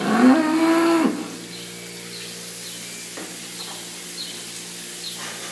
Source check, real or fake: real